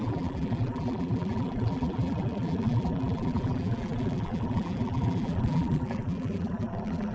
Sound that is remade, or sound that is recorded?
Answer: remade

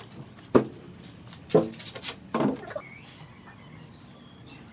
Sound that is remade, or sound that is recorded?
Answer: recorded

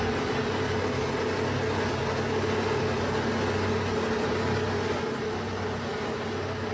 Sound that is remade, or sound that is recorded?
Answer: recorded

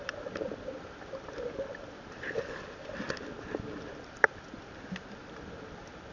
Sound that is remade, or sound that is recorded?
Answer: remade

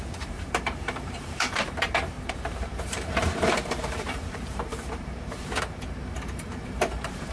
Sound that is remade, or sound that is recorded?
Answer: remade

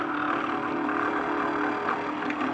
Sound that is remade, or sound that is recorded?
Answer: recorded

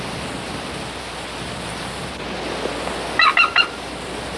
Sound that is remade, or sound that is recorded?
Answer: recorded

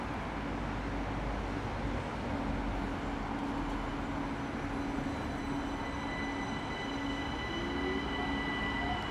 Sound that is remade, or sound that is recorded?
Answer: recorded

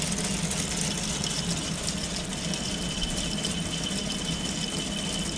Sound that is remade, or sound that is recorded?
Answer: recorded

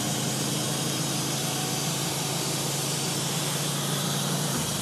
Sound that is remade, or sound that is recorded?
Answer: remade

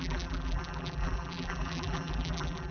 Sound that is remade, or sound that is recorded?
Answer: remade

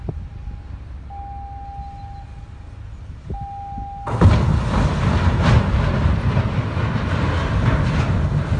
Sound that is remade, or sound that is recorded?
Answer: recorded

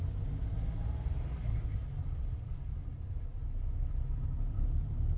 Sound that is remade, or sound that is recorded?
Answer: recorded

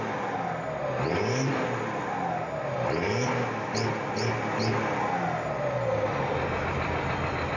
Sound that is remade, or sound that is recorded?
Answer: recorded